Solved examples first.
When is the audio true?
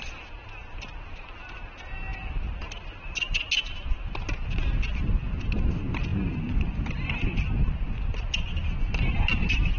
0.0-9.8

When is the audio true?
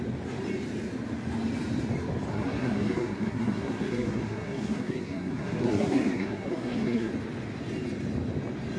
0.0-2.3; 7.1-8.8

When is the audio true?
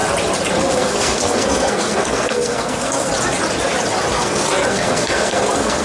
0.0-0.5; 3.1-4.1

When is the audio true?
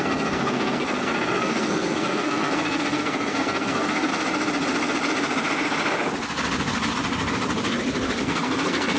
4.1-8.2